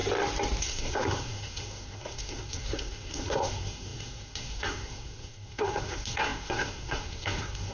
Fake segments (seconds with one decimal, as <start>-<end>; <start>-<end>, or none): 0.6-7.7